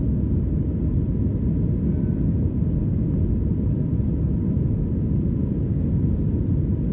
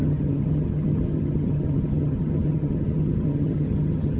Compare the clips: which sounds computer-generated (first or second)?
second